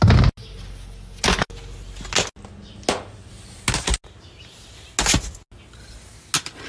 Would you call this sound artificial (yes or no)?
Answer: no